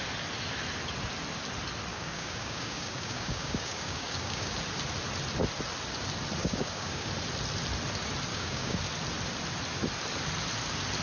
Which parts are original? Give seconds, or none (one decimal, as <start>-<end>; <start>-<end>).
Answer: 0.0-1.9; 4.6-6.4; 7.1-8.3; 8.8-11.0